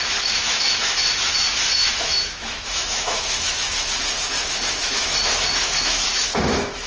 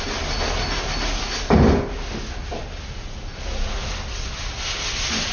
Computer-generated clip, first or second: first